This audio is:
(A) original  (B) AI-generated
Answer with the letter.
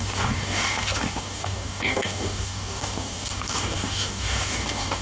B